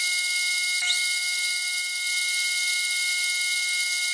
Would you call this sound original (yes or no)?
yes